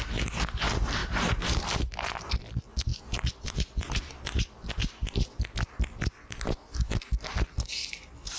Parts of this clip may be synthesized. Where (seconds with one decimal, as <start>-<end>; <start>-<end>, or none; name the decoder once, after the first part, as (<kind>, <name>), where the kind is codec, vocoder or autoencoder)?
1.0-1.8 (vocoder, BigVGAN v2); 2.9-5.1